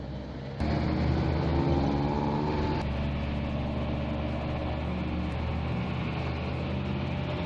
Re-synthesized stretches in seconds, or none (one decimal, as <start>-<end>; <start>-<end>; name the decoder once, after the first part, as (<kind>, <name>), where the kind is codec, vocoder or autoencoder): none